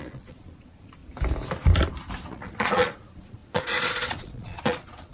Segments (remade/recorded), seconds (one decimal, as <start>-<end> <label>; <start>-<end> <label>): 0.0-1.0 remade; 1.0-2.3 recorded; 2.3-5.1 remade